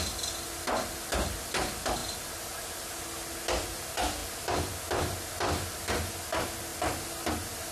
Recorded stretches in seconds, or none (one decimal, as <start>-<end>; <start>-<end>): 0.0-7.7